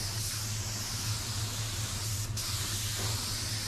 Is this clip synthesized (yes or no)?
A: no